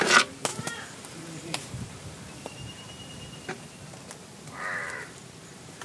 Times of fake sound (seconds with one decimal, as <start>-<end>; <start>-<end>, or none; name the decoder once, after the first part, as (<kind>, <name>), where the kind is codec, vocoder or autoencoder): 0.5-3.5 (vocoder, BigVGAN v2); 4.8-5.8